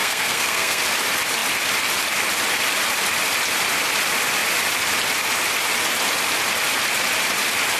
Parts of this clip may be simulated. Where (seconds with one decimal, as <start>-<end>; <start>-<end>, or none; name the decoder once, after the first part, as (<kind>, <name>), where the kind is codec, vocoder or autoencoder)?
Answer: 0.0-0.8 (codec, SNAC)